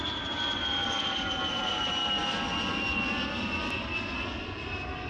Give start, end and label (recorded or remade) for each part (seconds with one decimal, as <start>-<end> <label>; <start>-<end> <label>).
0.0-0.8 remade; 0.8-1.6 recorded; 1.6-2.0 remade; 2.0-5.1 recorded